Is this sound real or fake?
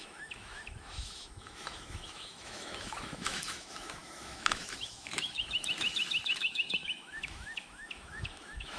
fake